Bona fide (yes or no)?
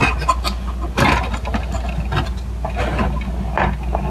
yes